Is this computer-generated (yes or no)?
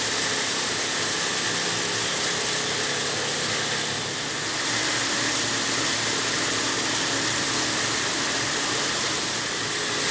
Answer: no